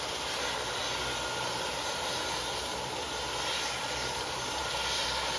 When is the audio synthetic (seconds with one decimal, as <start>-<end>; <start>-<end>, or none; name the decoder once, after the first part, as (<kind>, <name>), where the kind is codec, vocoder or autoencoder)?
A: 0.0-0.8 (vocoder, BigVGAN v2); 3.8-4.6